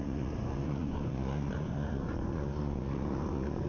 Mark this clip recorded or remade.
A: remade